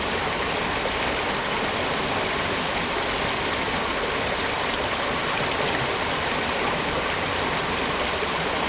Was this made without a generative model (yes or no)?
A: yes